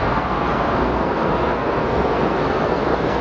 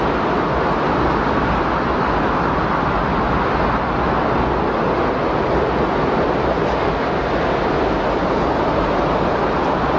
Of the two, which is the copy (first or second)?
first